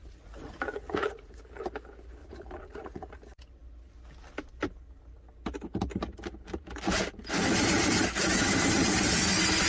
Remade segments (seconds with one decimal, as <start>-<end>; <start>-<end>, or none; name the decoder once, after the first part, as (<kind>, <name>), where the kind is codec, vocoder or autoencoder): 0.0-1.4 (vocoder, Vocos); 2.2-3.1